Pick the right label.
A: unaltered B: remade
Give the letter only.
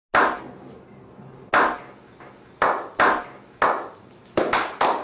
A